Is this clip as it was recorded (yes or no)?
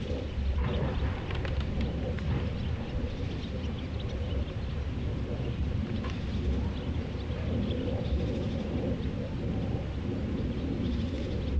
yes